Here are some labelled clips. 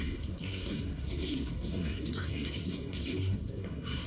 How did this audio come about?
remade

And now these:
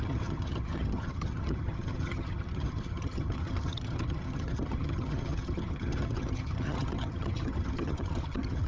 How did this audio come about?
remade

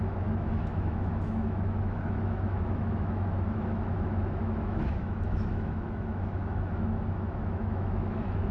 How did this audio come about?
remade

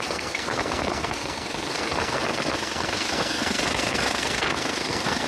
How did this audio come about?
remade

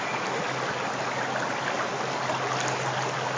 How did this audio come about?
recorded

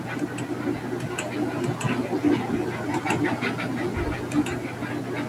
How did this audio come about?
recorded